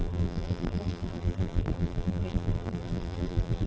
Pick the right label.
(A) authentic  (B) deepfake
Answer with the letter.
B